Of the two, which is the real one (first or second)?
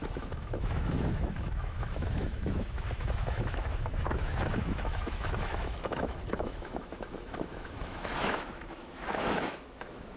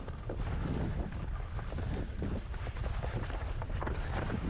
second